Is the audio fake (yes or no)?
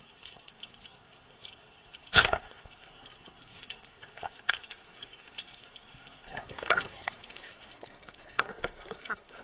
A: yes